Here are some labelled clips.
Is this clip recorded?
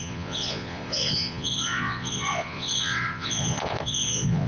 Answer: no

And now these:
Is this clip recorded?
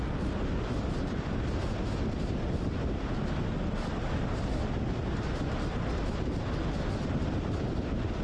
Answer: yes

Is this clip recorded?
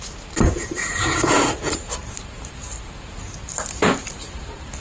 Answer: no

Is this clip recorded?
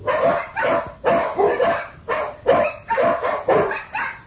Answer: yes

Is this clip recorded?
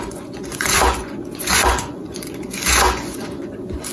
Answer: no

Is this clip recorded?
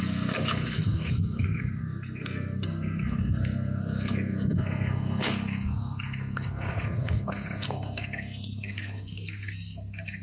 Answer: no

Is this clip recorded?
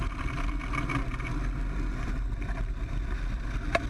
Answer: yes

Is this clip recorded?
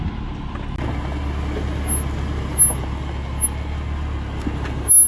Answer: yes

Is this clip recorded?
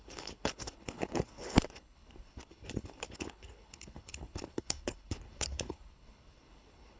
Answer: no